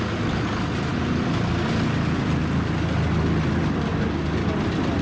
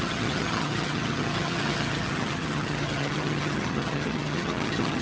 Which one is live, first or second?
first